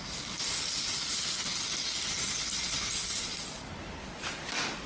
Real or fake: real